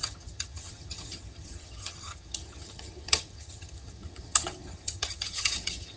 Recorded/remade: remade